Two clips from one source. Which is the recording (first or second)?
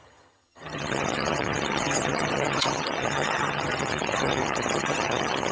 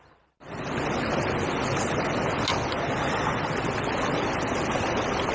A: second